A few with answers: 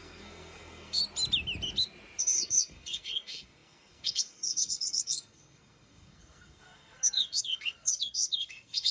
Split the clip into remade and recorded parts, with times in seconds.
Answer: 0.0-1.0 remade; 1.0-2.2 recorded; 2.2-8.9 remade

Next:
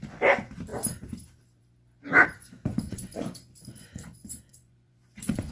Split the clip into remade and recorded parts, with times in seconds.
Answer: 0.0-2.3 recorded; 2.3-5.5 remade

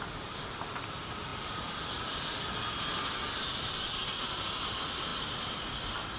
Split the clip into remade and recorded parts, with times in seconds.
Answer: 0.0-6.2 recorded

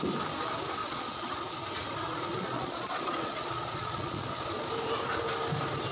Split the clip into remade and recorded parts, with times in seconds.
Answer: 0.0-0.8 recorded; 0.8-1.3 remade; 1.3-2.3 recorded; 2.3-4.3 remade; 4.3-5.9 recorded